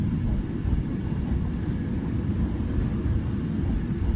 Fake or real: real